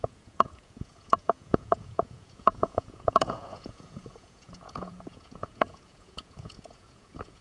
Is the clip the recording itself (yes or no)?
no